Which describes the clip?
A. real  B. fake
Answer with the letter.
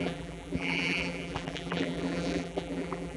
B